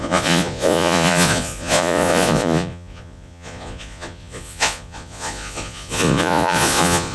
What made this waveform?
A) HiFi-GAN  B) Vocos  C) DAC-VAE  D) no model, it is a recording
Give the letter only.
B